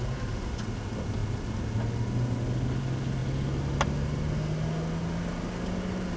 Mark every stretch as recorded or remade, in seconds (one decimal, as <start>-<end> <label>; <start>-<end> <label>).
0.0-6.2 recorded